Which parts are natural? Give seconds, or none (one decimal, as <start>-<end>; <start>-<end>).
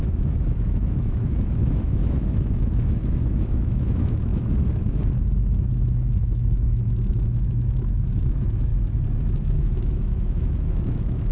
8.7-9.3